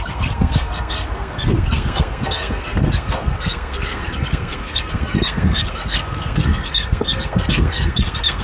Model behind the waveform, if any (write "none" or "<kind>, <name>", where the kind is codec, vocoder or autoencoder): codec, SNAC